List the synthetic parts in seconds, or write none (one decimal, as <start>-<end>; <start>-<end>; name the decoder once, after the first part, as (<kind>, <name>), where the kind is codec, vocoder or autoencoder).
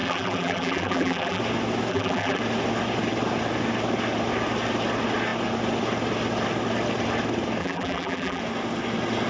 0.0-1.4 (vocoder, BigVGAN v2); 1.9-2.4; 7.6-8.4